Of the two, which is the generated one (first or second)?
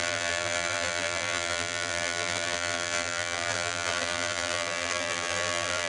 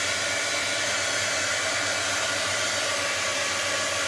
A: first